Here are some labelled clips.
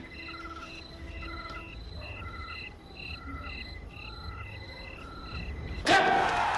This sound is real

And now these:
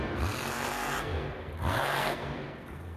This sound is fake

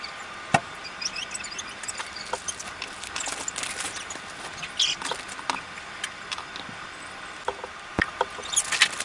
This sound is real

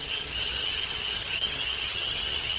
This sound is fake